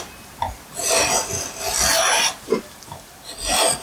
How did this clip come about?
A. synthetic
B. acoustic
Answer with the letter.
B